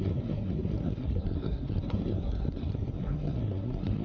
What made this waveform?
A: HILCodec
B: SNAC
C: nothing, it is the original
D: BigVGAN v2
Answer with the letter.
B